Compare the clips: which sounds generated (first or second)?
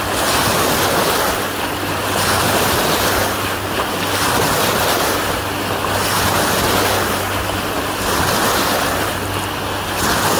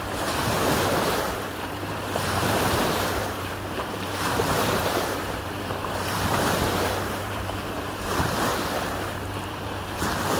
second